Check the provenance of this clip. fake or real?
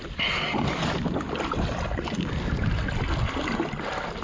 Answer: real